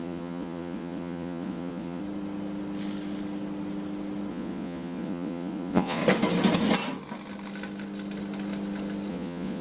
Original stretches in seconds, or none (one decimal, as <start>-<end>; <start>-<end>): 2.0-4.3; 6.0-9.1